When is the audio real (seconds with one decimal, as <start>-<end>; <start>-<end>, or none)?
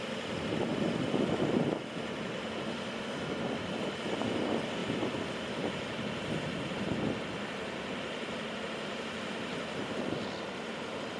0.0-11.2